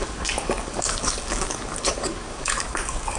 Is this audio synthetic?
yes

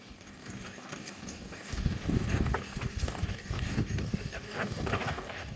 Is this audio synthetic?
yes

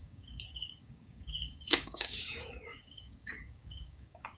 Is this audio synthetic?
yes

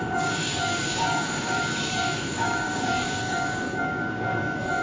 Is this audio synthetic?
yes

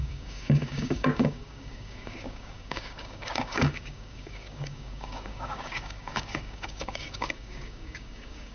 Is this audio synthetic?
yes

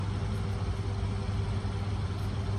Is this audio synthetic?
no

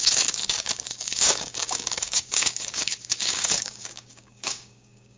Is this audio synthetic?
yes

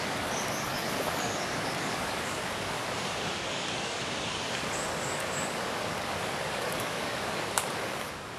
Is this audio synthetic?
yes